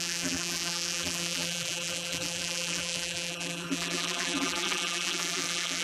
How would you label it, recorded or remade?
remade